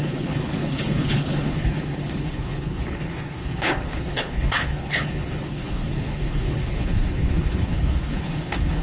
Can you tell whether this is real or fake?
fake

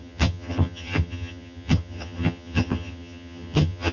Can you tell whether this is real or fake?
fake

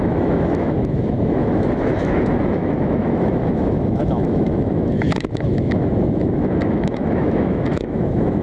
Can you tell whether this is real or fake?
fake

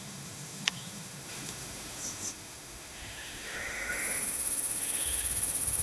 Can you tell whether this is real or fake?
fake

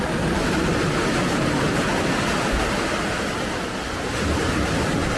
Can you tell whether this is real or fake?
real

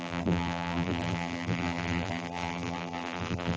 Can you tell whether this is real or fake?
fake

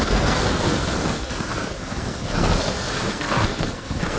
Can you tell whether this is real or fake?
fake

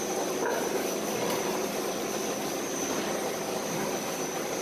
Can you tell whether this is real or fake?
real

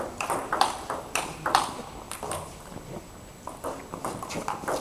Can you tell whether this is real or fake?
fake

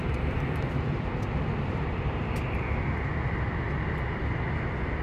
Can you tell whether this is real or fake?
real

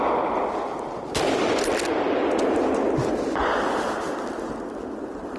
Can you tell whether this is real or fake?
real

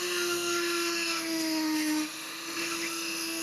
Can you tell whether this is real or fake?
fake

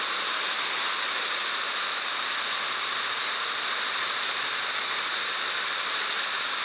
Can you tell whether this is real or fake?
fake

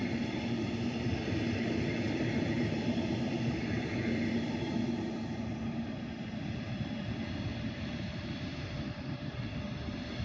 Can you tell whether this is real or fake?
fake